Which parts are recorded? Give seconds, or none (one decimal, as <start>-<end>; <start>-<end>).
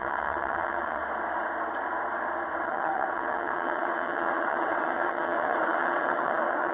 1.0-2.6